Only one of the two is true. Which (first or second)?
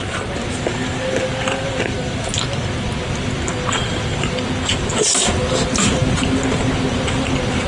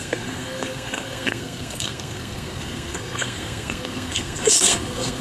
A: first